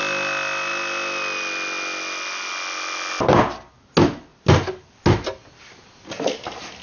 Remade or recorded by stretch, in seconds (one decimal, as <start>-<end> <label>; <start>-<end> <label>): 0.0-6.8 recorded